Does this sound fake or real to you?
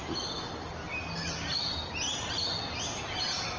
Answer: real